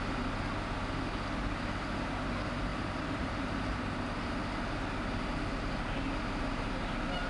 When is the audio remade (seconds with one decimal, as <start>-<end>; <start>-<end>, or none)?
2.7-3.8